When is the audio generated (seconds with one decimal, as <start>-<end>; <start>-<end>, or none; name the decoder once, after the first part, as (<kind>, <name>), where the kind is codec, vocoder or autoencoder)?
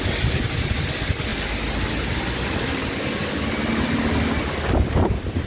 none